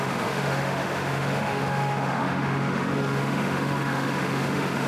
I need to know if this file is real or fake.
fake